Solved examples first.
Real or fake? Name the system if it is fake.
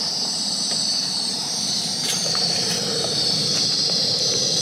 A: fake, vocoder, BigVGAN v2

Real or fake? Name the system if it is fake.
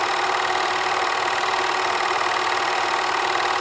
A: real